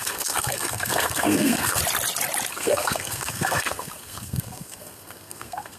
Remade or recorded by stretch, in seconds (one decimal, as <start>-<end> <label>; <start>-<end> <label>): 0.0-1.8 remade; 1.8-2.5 recorded; 2.5-5.8 remade